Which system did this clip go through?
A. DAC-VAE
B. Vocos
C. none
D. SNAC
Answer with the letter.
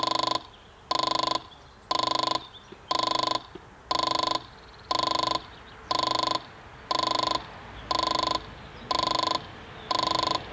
C